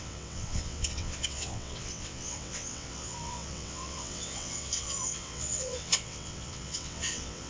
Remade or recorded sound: remade